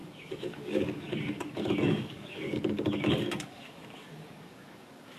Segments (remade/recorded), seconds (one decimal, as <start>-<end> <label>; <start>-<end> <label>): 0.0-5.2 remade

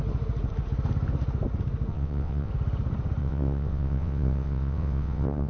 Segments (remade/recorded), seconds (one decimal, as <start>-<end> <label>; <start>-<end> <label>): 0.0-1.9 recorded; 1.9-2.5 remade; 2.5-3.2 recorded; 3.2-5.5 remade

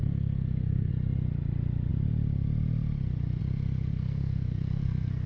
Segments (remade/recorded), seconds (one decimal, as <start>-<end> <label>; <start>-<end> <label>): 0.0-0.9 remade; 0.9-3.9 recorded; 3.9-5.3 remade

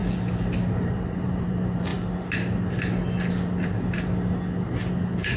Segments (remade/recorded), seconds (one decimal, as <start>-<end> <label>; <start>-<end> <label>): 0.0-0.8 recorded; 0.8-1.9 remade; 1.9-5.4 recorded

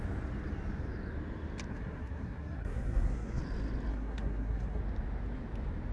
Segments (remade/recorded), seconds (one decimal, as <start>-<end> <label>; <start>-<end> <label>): 0.0-1.7 recorded; 1.7-3.4 remade; 3.4-3.9 recorded; 3.9-4.8 remade; 4.8-5.9 recorded